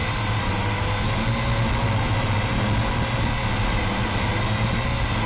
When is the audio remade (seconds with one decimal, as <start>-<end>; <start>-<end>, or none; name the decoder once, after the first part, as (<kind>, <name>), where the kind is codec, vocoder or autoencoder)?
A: none

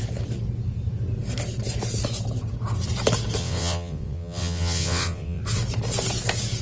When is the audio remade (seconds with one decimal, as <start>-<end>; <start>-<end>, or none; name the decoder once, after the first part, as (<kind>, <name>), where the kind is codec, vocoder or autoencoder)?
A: 3.4-5.4 (vocoder, WaveNeXt)

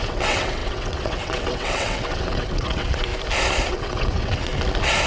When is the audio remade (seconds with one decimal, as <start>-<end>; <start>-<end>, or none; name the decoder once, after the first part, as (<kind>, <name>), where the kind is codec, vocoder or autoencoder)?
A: 0.0-3.1 (vocoder, WaveNeXt); 3.7-4.5

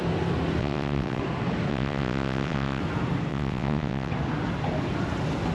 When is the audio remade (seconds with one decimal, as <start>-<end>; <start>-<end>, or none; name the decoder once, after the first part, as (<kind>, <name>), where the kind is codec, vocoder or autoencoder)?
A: 0.6-1.2 (vocoder, WaveNeXt); 1.7-2.8; 3.3-4.1

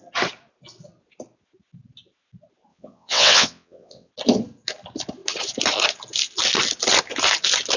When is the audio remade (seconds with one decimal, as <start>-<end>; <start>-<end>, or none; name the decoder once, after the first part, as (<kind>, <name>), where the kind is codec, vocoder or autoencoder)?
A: 2.7-4.1 (vocoder, WaveNeXt)

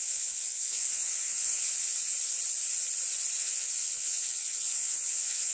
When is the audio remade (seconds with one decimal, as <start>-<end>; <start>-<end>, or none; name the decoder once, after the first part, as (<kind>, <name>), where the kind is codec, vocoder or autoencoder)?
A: 0.0-2.1 (vocoder, WaveNeXt); 3.4-5.5

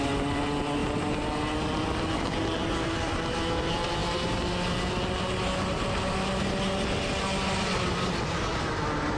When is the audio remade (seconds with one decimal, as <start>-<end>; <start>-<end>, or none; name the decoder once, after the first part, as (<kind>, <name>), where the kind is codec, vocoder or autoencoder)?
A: none

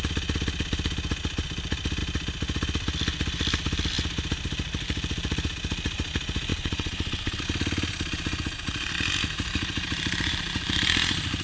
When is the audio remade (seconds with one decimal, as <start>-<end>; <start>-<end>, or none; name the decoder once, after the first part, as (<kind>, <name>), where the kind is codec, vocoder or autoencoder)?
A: 6.5-7.4 (vocoder, WaveNeXt)